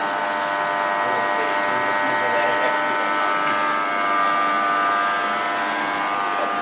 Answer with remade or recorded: recorded